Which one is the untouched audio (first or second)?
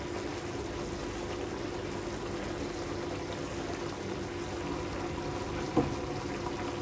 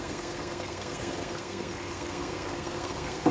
first